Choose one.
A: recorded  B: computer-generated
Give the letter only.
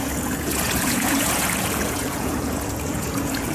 B